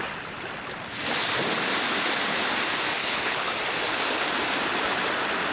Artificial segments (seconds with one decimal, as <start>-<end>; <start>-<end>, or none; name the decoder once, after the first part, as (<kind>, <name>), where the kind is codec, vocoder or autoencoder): 3.0-3.5 (codec, HILCodec)